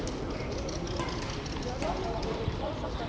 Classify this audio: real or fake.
real